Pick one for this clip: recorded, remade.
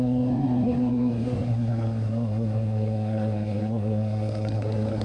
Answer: remade